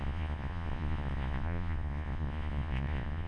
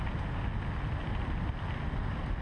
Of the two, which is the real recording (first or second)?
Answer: second